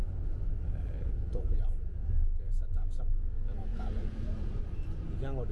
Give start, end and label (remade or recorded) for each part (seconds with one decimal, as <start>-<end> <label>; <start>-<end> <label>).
0.0-3.7 recorded; 3.7-4.6 remade; 4.6-5.5 recorded